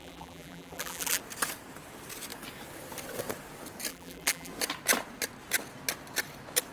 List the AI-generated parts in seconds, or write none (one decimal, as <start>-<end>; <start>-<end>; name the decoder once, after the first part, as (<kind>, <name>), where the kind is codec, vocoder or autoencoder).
0.0-1.2 (vocoder, BigVGAN v2); 3.9-4.5